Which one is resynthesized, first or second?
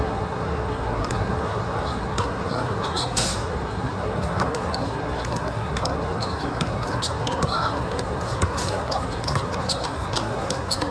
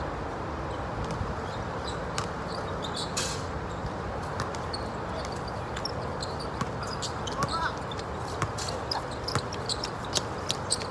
first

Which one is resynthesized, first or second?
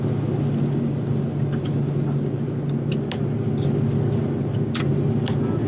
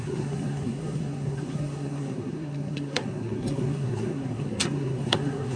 second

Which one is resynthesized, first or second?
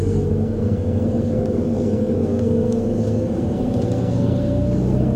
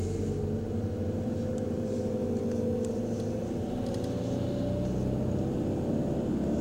first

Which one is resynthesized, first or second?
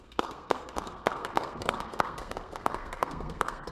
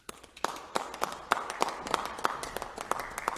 first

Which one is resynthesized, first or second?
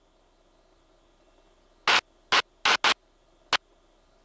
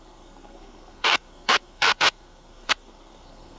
second